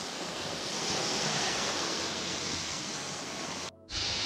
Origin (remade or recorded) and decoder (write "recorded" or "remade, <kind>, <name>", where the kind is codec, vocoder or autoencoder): remade, codec, SNAC